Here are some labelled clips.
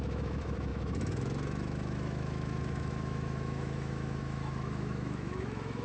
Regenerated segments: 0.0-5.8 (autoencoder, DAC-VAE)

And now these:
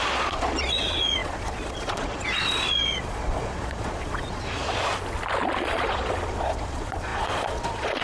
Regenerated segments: 0.0-4.9 (vocoder, Vocos); 5.6-8.0

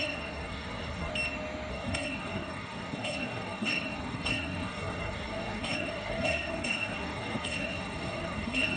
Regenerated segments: 0.0-1.1 (codec, SNAC); 1.7-8.8

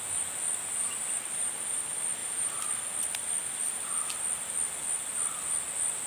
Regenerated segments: 0.8-1.8 (vocoder, BigVGAN v2); 2.2-2.7

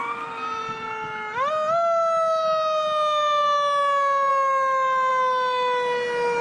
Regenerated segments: none

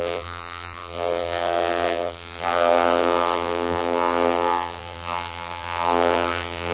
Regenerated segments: 0.0-6.7 (vocoder, BigVGAN v2)

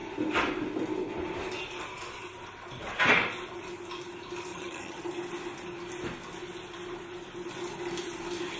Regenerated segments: 4.5-5.0 (vocoder, HiFi-GAN)

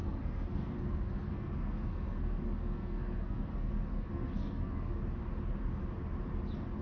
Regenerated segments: 0.0-5.0 (codec, SNAC)